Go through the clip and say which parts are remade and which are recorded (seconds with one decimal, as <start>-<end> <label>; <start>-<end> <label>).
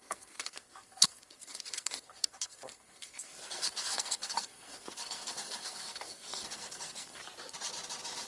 0.0-7.2 remade; 7.2-8.3 recorded